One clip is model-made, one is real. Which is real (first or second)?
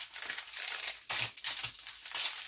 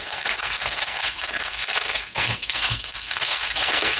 first